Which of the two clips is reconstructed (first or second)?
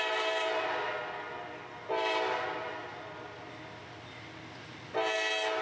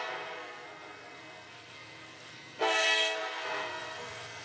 second